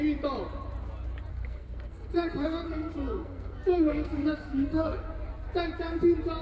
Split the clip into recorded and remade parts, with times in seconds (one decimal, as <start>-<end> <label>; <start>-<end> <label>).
0.0-1.3 recorded; 1.3-5.1 remade; 5.1-6.4 recorded